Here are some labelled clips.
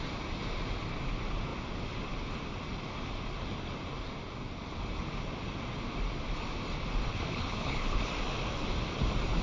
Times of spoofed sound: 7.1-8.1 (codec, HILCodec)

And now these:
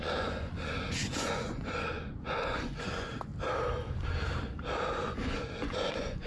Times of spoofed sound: 0.0-3.3 (vocoder, Vocos); 4.9-6.3

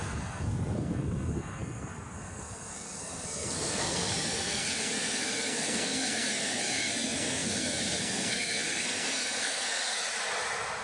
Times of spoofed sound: 0.0-10.0 (codec, SNAC)

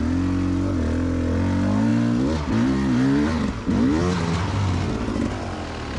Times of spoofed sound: none

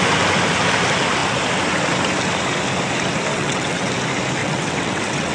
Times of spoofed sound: 3.3-3.9 (vocoder, WaveNeXt); 4.4-5.3

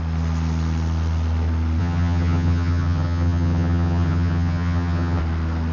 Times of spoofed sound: 1.8-5.2 (vocoder, HiFi-GAN)

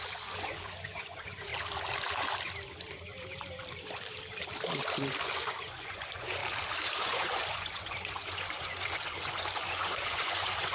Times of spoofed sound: 0.0-1.5 (vocoder, Vocos); 5.2-6.4; 7.0-10.7